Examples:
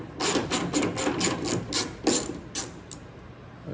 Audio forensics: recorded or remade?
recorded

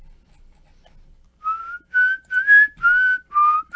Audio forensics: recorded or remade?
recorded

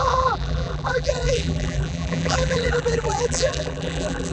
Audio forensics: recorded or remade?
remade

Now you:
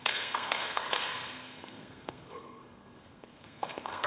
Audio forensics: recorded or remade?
remade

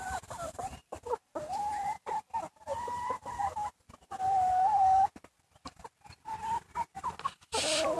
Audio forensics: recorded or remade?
recorded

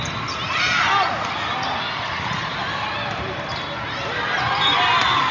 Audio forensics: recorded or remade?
recorded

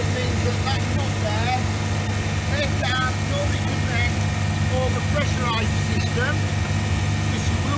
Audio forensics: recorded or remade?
recorded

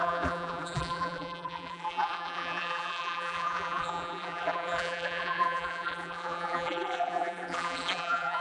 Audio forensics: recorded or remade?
remade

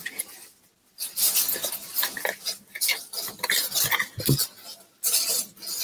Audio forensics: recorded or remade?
recorded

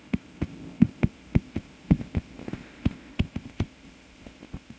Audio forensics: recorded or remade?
remade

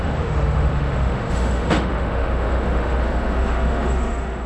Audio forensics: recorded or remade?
remade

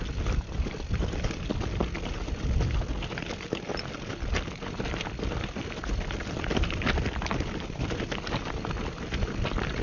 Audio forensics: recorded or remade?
recorded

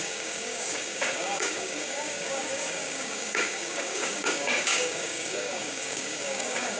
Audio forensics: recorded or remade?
remade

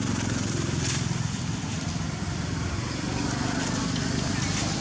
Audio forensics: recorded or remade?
recorded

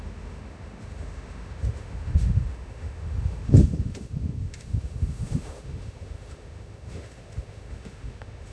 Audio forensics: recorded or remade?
remade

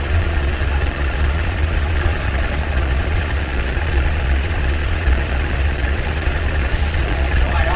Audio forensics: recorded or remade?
remade